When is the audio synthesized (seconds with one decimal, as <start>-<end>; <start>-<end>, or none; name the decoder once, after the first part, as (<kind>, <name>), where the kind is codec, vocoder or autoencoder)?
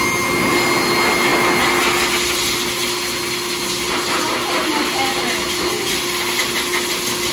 none